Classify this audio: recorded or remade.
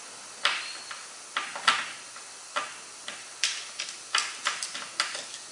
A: recorded